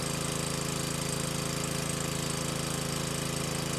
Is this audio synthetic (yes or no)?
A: no